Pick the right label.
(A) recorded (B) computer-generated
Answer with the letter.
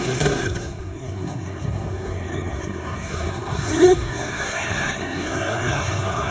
B